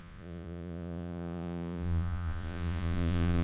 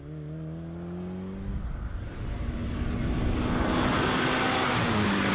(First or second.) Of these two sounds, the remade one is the first